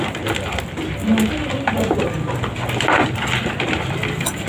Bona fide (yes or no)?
yes